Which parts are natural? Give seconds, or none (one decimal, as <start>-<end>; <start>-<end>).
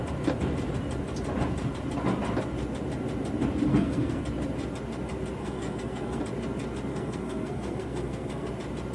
0.0-3.7; 4.2-5.4; 6.2-6.9; 8.5-8.9